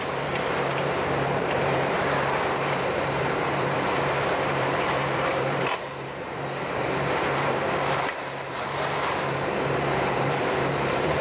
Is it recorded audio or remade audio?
remade